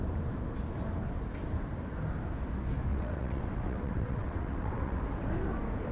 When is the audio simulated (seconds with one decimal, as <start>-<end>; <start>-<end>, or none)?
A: 2.9-5.0